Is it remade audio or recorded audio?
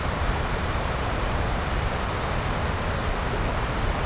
recorded